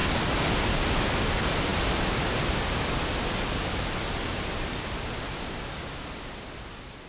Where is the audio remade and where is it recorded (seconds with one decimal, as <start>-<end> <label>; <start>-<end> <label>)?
0.0-7.1 recorded